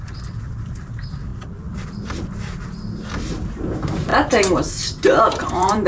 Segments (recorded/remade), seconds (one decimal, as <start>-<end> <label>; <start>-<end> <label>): 0.0-1.3 remade; 1.3-3.6 recorded; 3.6-4.1 remade; 4.1-5.2 recorded; 5.2-5.9 remade